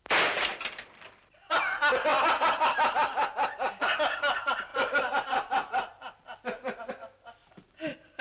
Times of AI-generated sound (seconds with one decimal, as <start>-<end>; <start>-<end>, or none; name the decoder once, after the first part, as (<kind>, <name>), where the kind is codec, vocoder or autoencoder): 4.7-6.9 (vocoder, BigVGAN v2); 7.4-8.2